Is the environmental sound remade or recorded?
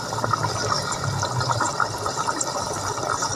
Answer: remade